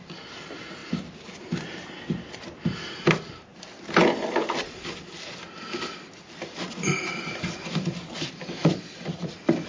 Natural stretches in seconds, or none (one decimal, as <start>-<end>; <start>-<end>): 0.0-0.8; 1.6-8.6